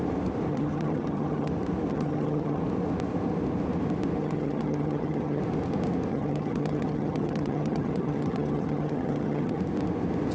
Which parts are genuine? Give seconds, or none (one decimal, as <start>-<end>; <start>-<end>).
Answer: 0.0-0.5; 1.5-1.9; 2.6-4.2; 5.4-6.1; 9.6-10.3

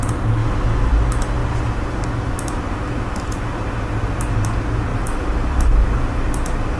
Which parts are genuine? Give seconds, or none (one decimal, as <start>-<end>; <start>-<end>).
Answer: 0.0-4.9; 6.3-6.8

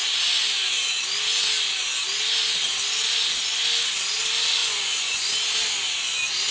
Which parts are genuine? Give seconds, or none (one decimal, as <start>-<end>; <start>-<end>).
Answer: 0.0-4.6; 5.3-6.5

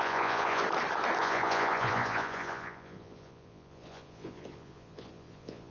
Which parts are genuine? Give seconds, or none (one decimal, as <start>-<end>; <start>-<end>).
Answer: 0.6-1.2

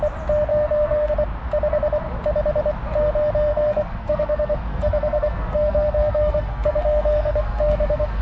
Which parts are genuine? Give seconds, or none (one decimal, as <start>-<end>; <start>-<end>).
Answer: 0.0-0.5; 1.1-3.5

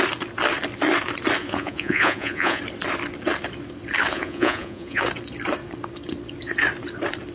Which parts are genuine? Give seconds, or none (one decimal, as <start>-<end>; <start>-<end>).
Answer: 0.0-1.4; 2.6-4.1; 5.0-7.3

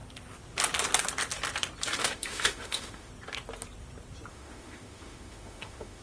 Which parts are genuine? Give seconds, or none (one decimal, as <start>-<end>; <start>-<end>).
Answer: 0.0-2.0; 3.1-4.3